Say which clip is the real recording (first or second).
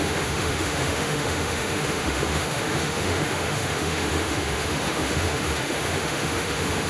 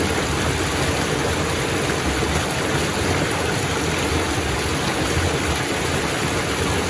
second